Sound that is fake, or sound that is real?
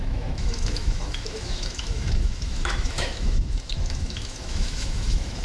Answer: fake